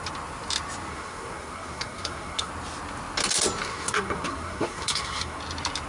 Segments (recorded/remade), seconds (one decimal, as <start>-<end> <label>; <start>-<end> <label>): 0.0-0.9 recorded; 0.9-2.5 remade; 2.5-3.7 recorded; 3.7-5.4 remade; 5.4-5.9 recorded